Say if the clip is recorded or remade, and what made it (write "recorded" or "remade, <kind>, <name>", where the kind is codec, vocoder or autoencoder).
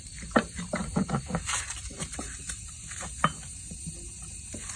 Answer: remade, vocoder, BigVGAN v2